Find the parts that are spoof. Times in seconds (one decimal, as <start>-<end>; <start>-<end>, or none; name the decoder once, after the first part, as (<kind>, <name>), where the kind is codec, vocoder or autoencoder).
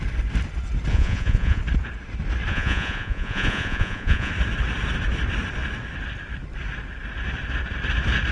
0.9-1.6 (vocoder, Vocos); 2.5-4.3